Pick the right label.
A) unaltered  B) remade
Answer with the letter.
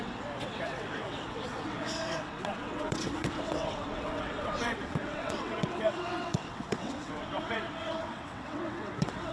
B